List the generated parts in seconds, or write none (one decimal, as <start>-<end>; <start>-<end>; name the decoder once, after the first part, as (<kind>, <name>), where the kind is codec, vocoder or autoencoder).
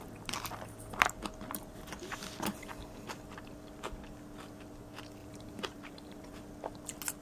5.2-6.4 (vocoder, BigVGAN v2)